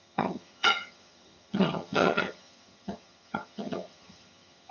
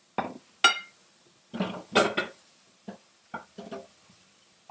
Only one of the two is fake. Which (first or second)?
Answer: first